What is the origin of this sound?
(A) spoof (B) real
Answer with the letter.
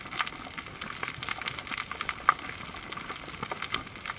B